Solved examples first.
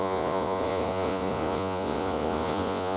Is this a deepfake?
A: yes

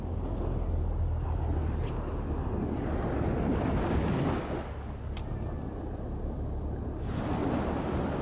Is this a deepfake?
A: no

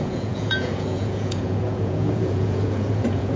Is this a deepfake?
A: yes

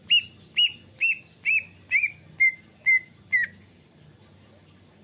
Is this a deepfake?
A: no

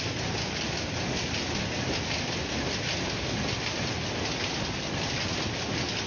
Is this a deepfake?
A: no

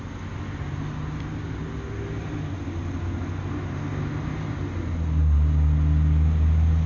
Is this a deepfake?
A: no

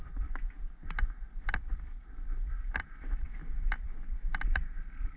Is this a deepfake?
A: no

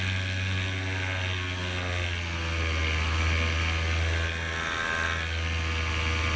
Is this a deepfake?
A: no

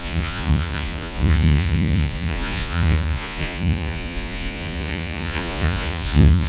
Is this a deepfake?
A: yes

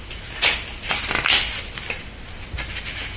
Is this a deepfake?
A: no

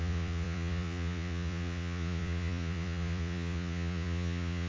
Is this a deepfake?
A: yes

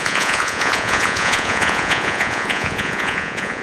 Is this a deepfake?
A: yes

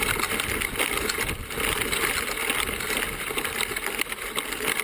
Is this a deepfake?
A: no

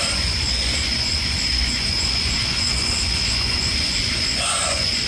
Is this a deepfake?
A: yes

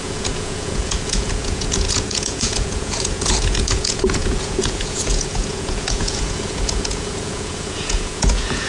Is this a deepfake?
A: yes